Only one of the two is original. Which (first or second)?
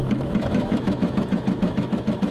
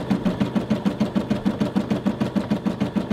second